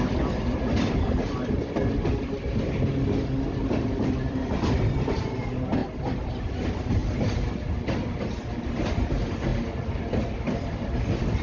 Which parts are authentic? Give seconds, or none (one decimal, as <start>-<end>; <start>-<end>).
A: 1.8-4.3; 7.0-8.3; 9.5-10.1